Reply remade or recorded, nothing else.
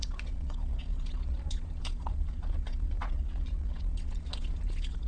remade